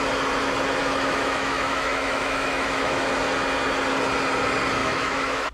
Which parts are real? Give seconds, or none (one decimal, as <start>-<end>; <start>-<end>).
0.0-0.8; 3.1-4.8